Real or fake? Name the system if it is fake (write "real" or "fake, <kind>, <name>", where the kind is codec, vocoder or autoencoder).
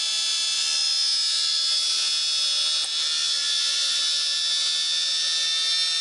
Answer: real